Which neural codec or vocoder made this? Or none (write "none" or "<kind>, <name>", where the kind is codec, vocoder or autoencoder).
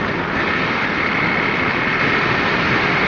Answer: none